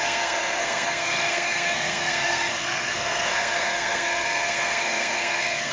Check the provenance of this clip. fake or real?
fake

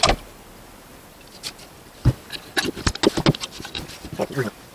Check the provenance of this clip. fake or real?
real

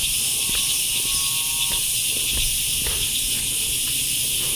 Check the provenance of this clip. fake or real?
real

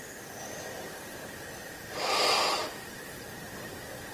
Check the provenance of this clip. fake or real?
fake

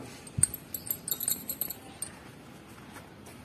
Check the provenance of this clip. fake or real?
real